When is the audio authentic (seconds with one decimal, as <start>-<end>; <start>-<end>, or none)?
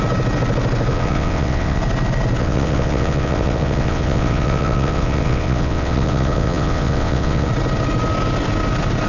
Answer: 0.0-0.9; 1.8-2.4; 7.5-9.1